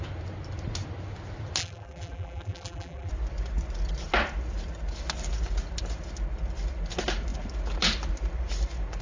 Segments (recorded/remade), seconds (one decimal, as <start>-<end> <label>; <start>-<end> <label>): 0.0-1.6 recorded; 1.6-3.1 remade; 3.1-9.0 recorded

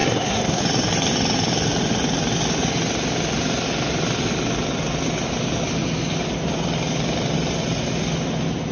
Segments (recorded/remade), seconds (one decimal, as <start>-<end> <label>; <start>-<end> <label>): 0.0-0.6 remade; 0.6-8.7 recorded

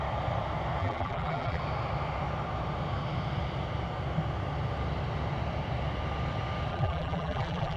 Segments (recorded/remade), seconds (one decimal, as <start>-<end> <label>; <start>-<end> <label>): 0.0-0.8 recorded; 0.8-1.6 remade; 1.6-6.7 recorded; 6.7-7.8 remade

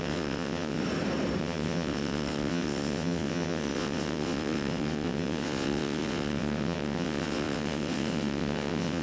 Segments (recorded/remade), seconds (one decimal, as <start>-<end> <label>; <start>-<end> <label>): 0.0-0.8 remade; 0.8-1.4 recorded; 1.4-9.0 remade

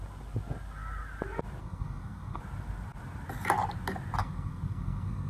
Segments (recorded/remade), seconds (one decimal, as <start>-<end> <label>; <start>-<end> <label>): 0.0-1.6 recorded; 1.6-2.4 remade; 2.4-4.2 recorded; 4.2-5.3 remade

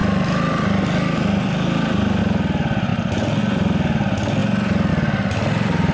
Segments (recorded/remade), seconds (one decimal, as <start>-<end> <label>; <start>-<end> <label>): 0.0-5.9 recorded

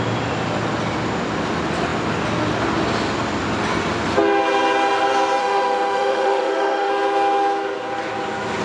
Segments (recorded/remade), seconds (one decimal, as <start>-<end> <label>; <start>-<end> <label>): 0.0-5.4 recorded; 5.4-6.9 remade; 6.9-8.6 recorded